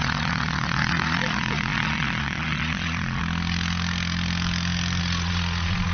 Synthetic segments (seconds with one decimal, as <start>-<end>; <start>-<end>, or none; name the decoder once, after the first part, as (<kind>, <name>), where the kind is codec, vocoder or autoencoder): 0.0-3.2 (vocoder, Vocos); 5.0-5.9